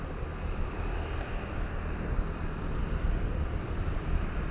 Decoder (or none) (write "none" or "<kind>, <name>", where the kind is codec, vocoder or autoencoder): none